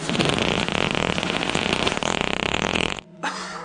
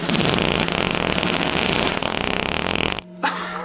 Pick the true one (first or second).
second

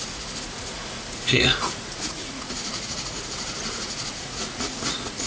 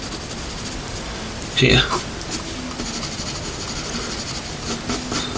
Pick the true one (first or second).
second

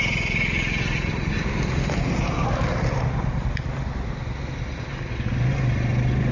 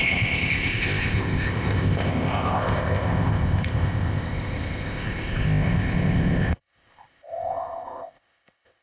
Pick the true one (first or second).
first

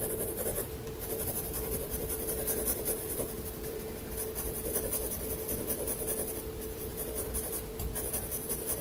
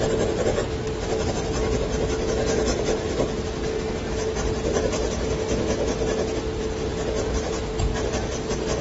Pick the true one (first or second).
second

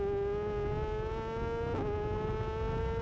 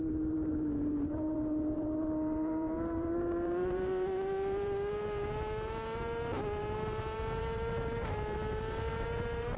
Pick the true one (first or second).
first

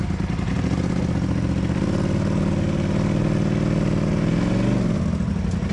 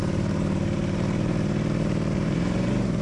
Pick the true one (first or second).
first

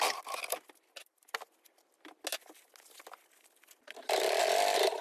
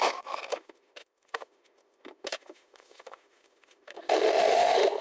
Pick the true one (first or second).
first